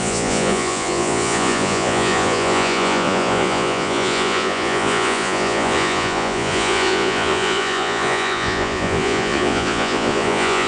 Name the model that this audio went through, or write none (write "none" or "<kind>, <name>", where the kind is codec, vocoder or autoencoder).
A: vocoder, Vocos